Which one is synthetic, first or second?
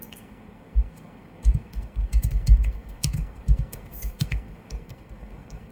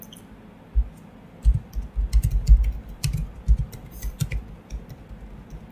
first